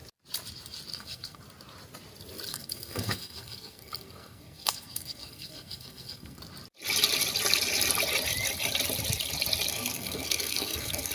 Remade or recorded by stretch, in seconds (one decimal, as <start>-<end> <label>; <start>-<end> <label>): 0.0-0.9 recorded; 0.9-1.4 remade; 1.4-2.5 recorded; 2.5-6.4 remade; 6.4-9.7 recorded; 9.7-11.1 remade